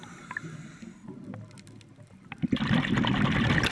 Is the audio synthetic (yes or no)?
no